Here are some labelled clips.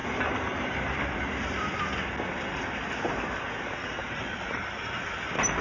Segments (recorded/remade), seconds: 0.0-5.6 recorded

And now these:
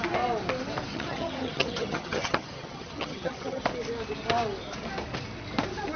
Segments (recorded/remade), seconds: 0.0-0.9 recorded; 0.9-3.6 remade; 3.6-6.0 recorded

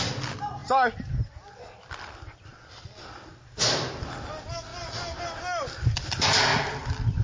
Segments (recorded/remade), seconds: 0.0-7.2 recorded

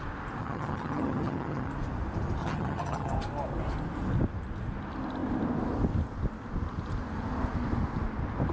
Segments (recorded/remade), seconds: 0.0-0.4 recorded; 0.4-1.7 remade; 1.7-2.4 recorded; 2.4-3.1 remade; 3.1-8.5 recorded

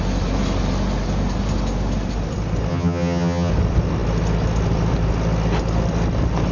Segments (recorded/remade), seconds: 0.0-2.7 recorded; 2.7-3.5 remade; 3.5-6.5 recorded

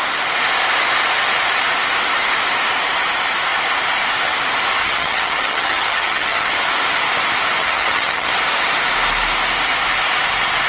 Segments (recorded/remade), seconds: 0.0-4.8 recorded; 4.8-6.5 remade; 6.5-7.6 recorded; 7.6-8.3 remade; 8.3-10.7 recorded

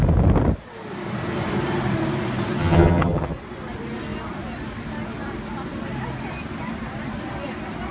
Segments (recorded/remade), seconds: 0.0-2.6 recorded; 2.6-3.3 remade; 3.3-7.9 recorded